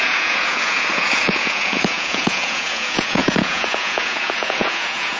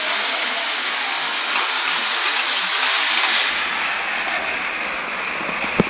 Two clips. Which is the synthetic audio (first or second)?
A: first